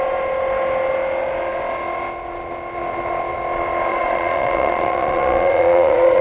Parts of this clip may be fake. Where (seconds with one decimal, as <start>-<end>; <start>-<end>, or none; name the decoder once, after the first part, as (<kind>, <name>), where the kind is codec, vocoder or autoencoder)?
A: 3.9-6.2 (vocoder, Vocos)